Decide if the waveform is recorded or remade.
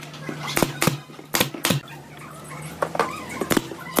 recorded